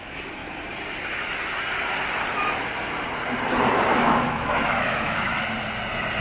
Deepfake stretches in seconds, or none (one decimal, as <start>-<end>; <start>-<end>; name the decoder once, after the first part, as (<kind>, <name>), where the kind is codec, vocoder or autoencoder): 0.0-0.4 (autoencoder, DAC-VAE); 3.7-5.3